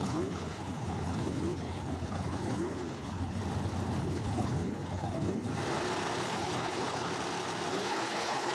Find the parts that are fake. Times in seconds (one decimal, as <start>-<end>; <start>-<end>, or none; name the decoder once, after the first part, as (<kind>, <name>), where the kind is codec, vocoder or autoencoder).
0.0-3.4 (codec, HILCodec); 4.0-5.5; 6.2-7.1; 7.7-8.5